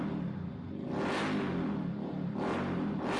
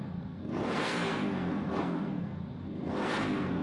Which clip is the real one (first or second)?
first